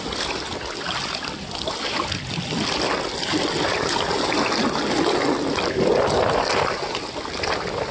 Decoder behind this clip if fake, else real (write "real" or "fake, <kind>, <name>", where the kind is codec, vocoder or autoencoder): real